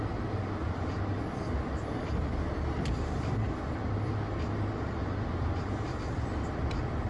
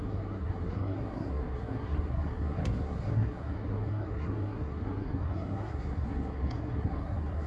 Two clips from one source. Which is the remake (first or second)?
second